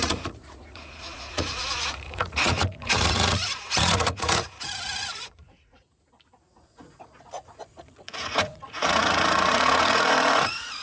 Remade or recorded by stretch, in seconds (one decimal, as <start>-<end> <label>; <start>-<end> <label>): 0.0-10.8 remade